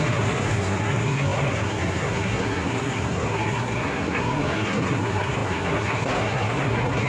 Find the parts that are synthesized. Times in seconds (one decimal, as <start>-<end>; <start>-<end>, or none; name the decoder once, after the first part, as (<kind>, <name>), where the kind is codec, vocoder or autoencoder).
0.0-7.1 (codec, SNAC)